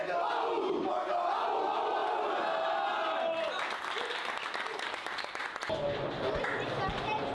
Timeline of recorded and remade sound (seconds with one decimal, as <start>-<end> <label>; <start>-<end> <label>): 0.0-7.3 recorded